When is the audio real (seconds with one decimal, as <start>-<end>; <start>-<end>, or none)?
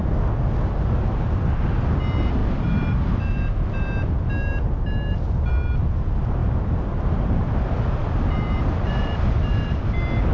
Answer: 0.0-2.4; 3.6-6.4; 9.8-10.3